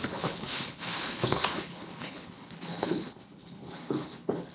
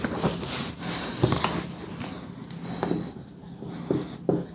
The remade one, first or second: first